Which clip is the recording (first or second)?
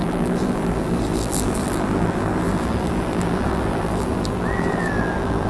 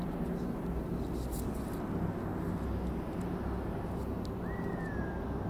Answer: second